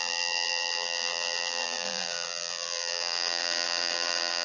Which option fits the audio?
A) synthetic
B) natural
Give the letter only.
A